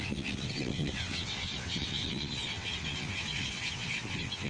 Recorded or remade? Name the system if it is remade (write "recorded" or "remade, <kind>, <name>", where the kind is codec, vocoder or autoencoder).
remade, vocoder, WaveNeXt